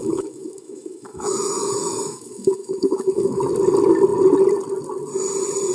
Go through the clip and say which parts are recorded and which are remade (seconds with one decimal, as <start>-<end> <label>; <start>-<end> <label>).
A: 0.0-3.4 remade; 3.4-5.7 recorded